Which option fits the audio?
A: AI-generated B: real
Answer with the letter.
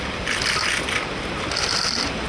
B